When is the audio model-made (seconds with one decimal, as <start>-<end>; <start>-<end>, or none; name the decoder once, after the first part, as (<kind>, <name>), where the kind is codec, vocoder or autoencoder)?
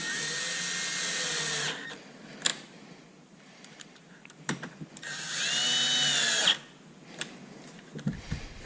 2.5-4.9 (vocoder, BigVGAN v2)